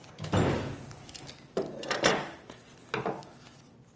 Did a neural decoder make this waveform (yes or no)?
no